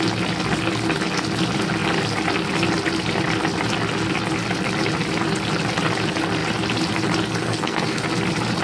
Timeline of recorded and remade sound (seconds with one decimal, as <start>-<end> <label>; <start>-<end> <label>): 0.0-7.4 recorded; 7.4-8.0 remade; 8.0-8.6 recorded